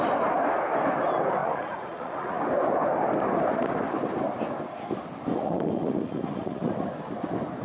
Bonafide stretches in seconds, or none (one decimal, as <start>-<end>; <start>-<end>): 0.0-1.4; 2.4-5.3; 6.7-7.6